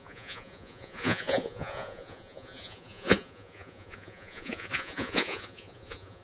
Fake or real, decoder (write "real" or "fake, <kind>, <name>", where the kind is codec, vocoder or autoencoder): fake, vocoder, Vocos